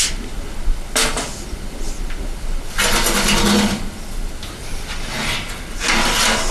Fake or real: real